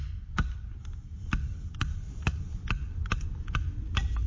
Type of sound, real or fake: real